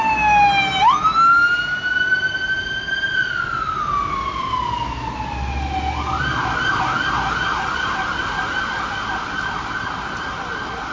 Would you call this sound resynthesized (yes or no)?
no